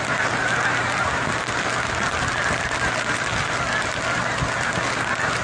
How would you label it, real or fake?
real